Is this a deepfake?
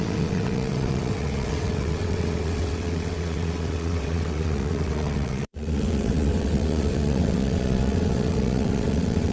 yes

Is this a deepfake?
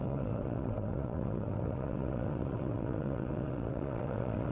yes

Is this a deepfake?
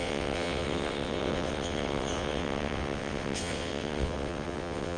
yes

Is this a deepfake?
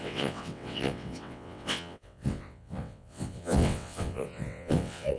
yes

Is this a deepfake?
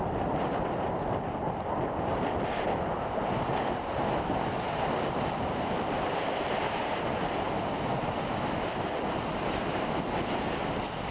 no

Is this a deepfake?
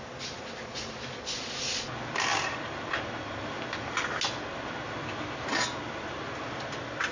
no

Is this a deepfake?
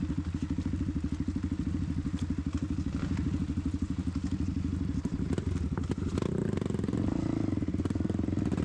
no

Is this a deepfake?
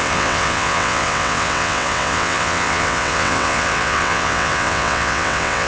yes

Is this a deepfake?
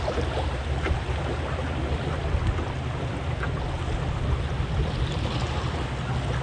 no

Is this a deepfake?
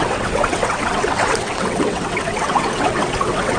yes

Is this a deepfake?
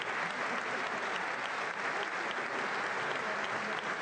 no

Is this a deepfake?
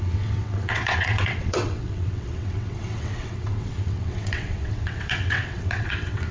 yes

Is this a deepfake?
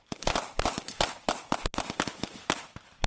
no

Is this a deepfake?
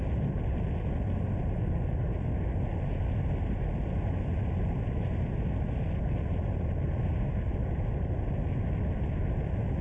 no